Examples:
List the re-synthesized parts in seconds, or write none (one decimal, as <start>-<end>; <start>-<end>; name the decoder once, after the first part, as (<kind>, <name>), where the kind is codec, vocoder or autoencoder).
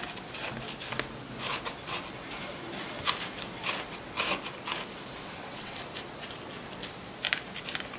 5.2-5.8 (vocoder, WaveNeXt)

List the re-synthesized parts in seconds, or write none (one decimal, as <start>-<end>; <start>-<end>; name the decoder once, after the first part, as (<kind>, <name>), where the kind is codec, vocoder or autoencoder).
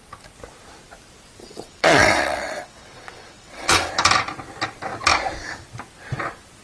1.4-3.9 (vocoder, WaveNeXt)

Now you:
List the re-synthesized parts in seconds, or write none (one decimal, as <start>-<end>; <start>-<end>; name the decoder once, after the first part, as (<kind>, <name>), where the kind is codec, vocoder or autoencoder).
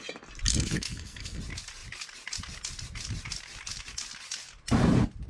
0.5-1.4 (codec, SNAC)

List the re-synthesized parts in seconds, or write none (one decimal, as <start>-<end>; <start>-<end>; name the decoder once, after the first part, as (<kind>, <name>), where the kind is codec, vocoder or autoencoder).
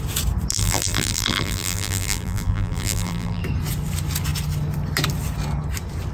0.5-3.4 (vocoder, BigVGAN v2)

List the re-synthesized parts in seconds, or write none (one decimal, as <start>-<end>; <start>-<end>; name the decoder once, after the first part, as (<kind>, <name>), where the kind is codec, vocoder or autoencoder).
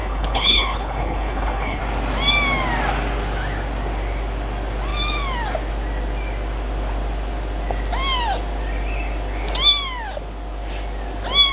0.0-1.8 (codec, HILCodec)